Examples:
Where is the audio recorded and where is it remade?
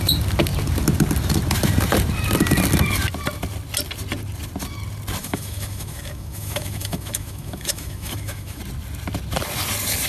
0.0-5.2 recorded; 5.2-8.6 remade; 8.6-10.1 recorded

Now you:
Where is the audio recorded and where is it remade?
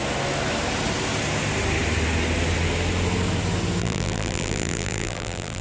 0.0-3.8 recorded; 3.8-5.6 remade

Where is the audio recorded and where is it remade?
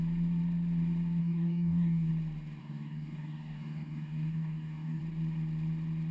0.0-1.2 recorded; 1.2-2.1 remade; 2.1-2.6 recorded; 2.6-5.0 remade; 5.0-6.1 recorded